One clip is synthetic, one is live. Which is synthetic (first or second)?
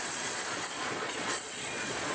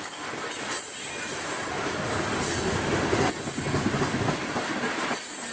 first